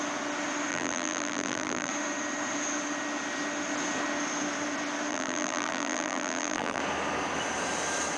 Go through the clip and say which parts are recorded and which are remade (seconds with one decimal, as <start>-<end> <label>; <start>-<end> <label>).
0.0-0.7 recorded; 0.7-1.9 remade; 1.9-5.1 recorded; 5.1-6.8 remade; 6.8-8.2 recorded

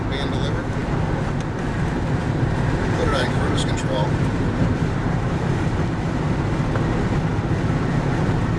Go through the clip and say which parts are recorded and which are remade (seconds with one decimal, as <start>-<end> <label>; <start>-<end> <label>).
0.0-2.2 recorded; 2.2-5.8 remade; 5.8-8.6 recorded

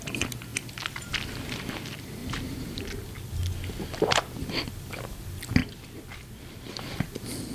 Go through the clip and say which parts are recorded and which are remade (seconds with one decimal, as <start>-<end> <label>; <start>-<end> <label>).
0.0-0.5 recorded; 0.5-1.7 remade; 1.7-2.2 recorded; 2.2-2.8 remade; 2.8-5.6 recorded; 5.6-6.8 remade; 6.8-7.5 recorded